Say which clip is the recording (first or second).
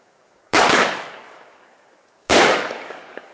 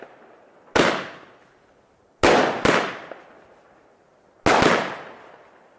second